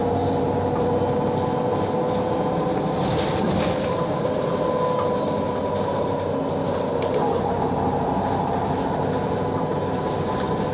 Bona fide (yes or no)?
yes